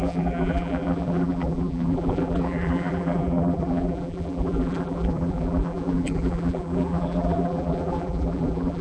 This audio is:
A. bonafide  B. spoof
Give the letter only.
B